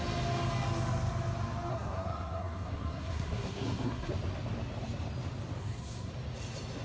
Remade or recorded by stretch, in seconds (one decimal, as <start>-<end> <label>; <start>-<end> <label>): 0.0-1.7 recorded; 1.7-4.1 remade; 4.1-5.6 recorded; 5.6-6.1 remade; 6.1-6.8 recorded